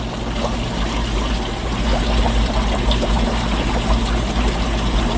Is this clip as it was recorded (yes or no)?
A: yes